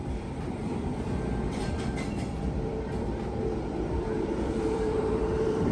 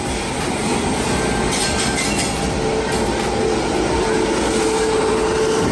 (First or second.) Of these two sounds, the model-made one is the first